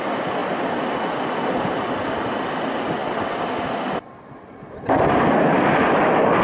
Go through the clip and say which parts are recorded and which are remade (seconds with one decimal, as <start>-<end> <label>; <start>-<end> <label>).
0.0-6.4 recorded